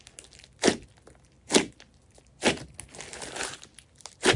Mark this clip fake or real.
real